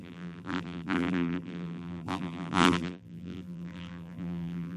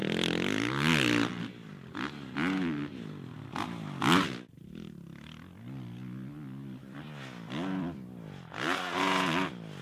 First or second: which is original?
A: second